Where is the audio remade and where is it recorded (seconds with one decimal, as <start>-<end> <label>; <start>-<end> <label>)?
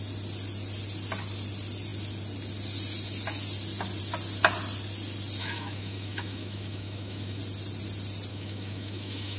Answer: 0.0-5.4 recorded; 5.4-7.4 remade; 7.4-8.3 recorded; 8.3-9.4 remade